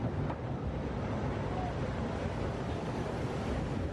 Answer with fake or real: real